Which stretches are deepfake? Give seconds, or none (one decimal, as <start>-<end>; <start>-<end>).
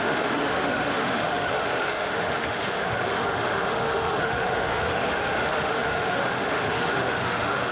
0.0-7.7